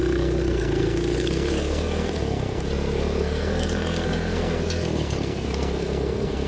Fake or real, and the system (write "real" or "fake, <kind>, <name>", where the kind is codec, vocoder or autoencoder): fake, codec, SNAC